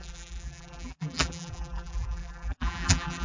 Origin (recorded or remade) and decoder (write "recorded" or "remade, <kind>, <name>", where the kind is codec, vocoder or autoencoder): remade, vocoder, BigVGAN v2